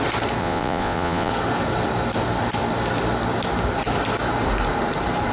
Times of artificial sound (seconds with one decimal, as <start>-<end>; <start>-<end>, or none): 0.4-1.3